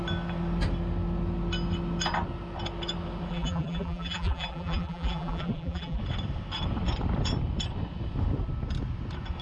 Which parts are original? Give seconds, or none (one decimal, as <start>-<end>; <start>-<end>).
0.0-3.3; 6.0-9.4